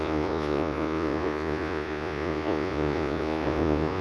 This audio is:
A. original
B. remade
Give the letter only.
B